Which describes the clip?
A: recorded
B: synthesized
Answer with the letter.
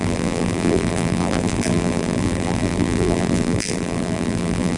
B